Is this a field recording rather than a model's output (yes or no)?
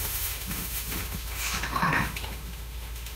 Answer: no